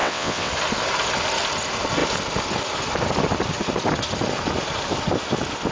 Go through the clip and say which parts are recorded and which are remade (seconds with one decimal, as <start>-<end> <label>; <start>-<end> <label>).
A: 0.0-0.5 remade; 0.5-5.7 recorded